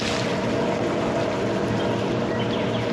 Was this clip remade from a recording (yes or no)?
no